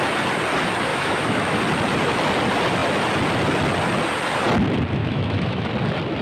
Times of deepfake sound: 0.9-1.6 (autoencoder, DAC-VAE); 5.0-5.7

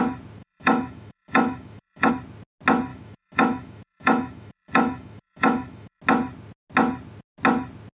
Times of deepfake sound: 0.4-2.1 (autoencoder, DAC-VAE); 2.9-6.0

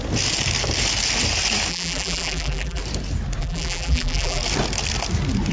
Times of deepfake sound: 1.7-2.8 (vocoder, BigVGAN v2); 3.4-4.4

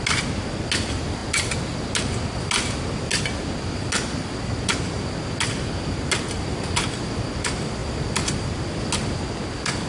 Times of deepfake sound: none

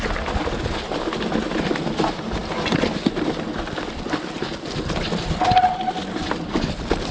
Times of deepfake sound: none